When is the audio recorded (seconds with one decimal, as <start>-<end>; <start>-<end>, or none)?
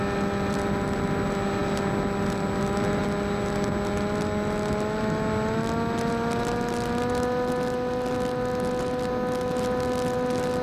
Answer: 0.0-10.6